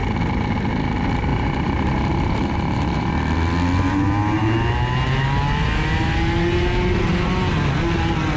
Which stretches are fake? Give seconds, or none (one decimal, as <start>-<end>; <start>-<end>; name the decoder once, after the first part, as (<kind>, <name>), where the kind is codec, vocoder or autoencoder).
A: 1.3-3.1 (vocoder, BigVGAN v2)